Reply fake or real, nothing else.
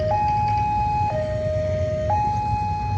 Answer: real